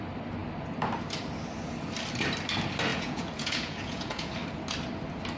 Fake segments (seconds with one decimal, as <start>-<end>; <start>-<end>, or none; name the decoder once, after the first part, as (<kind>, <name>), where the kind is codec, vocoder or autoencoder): 2.9-4.3 (vocoder, Vocos)